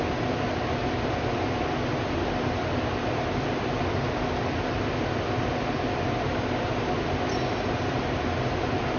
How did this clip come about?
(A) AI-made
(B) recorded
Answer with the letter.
B